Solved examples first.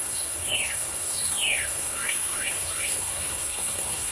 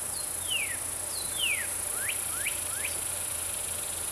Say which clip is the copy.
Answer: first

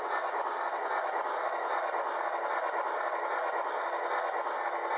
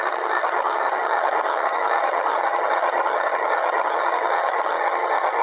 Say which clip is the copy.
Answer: second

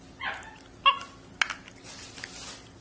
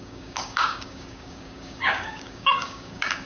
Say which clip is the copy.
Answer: second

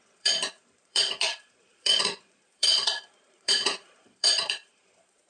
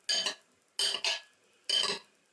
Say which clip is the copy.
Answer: first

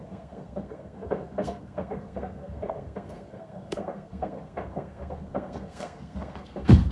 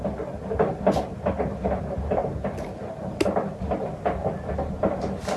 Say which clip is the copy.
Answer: first